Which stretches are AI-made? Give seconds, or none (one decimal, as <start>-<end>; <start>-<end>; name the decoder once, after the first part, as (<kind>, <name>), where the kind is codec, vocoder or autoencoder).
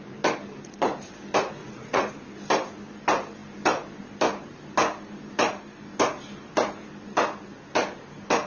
1.6-2.1 (vocoder, Vocos)